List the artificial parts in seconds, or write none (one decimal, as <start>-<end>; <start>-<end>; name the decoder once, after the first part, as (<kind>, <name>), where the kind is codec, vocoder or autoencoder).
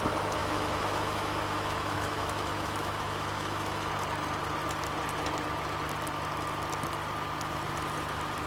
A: 0.4-3.9 (autoencoder, DAC-VAE)